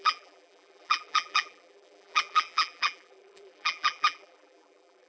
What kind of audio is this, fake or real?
fake